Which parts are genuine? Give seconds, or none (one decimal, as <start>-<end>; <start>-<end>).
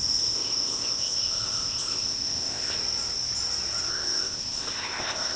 2.8-3.9